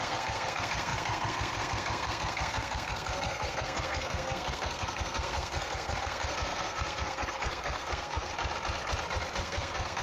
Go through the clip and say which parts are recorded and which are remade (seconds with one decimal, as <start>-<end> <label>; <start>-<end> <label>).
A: 0.0-8.3 remade; 8.3-9.4 recorded; 9.4-10.0 remade